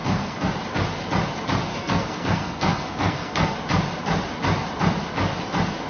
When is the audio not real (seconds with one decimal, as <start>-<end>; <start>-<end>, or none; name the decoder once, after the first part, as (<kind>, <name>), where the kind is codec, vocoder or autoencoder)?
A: 0.0-0.5 (codec, SNAC); 1.7-3.5